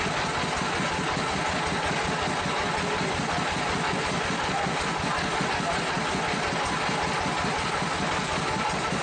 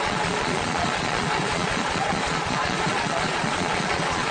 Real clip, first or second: first